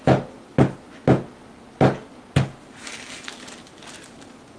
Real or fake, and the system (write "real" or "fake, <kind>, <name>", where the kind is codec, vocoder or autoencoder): real